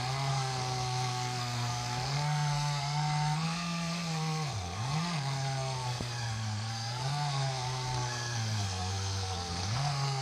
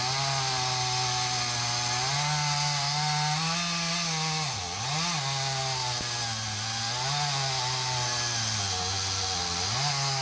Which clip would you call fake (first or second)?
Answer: first